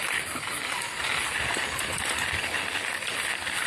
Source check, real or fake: real